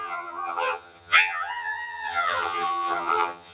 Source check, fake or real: fake